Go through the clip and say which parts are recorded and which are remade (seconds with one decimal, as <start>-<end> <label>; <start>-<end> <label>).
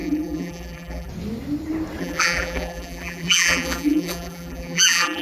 0.0-1.1 remade; 1.1-2.0 recorded; 2.0-5.2 remade